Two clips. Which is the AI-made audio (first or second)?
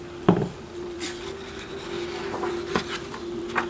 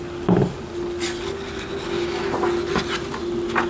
first